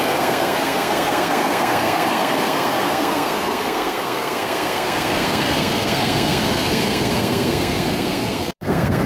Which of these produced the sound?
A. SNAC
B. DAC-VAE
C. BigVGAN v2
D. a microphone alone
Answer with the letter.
A